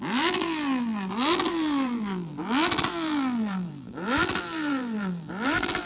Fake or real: fake